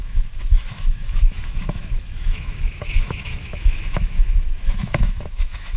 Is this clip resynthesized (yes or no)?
yes